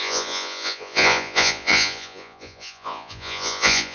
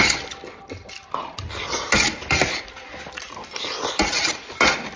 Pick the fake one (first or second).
first